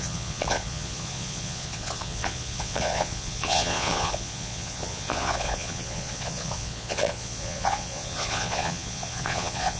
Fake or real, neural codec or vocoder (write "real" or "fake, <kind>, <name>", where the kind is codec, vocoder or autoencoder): fake, vocoder, Vocos